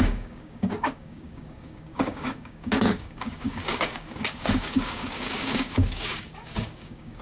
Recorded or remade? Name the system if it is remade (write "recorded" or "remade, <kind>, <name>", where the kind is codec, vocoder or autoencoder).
remade, codec, DAC